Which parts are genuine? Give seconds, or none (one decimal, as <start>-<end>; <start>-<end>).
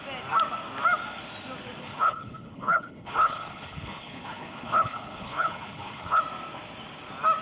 0.0-1.8; 6.2-7.4